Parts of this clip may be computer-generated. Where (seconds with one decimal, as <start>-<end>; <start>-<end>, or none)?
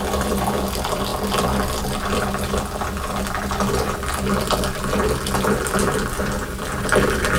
0.0-7.4